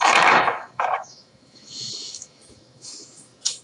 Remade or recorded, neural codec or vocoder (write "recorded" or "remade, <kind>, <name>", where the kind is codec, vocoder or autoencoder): remade, autoencoder, DAC-VAE